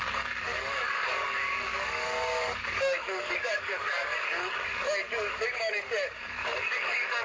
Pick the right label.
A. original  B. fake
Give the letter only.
B